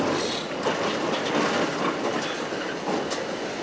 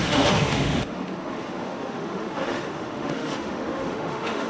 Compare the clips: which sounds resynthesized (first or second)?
second